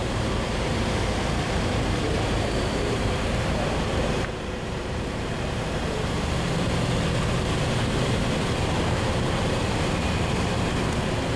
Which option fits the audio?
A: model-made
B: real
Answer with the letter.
A